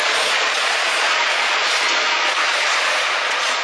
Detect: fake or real fake